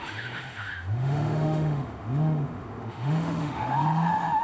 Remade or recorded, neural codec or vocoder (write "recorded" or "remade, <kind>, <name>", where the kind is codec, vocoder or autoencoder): remade, autoencoder, DAC-VAE